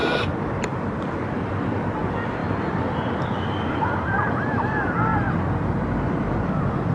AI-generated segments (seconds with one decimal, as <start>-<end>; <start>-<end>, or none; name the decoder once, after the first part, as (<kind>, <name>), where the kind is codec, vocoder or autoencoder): 0.0-2.4 (vocoder, BigVGAN v2); 3.6-5.1; 6.0-6.9